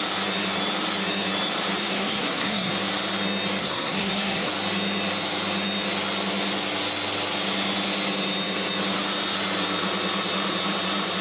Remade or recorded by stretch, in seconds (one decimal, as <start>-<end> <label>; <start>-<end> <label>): 0.0-1.8 recorded; 1.8-2.7 remade; 2.7-3.6 recorded; 3.6-4.5 remade; 4.5-11.2 recorded